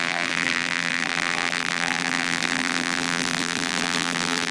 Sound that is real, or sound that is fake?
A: fake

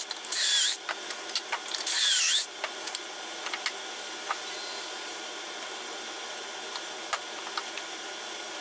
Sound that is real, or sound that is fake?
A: real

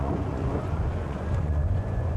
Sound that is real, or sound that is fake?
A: fake